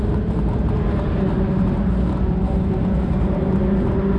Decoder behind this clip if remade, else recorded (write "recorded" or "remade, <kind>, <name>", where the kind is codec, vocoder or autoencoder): remade, vocoder, BigVGAN v2